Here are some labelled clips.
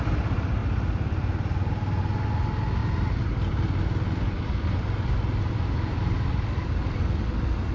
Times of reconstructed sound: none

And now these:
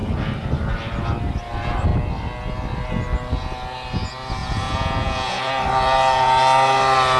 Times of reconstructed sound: 4.4-5.5 (vocoder, Vocos)

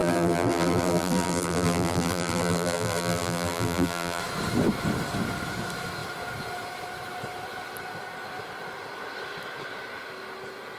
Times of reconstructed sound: 0.0-4.2 (vocoder, BigVGAN v2)

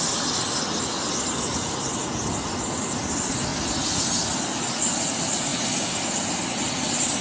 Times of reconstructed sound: none